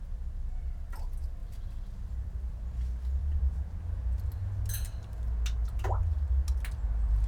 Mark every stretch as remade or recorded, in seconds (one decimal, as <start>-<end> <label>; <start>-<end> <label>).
0.0-1.4 recorded; 1.4-2.6 remade; 2.6-7.3 recorded